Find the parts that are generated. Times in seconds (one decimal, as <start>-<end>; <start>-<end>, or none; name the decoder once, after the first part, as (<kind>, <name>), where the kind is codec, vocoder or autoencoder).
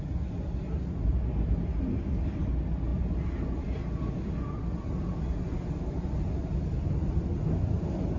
none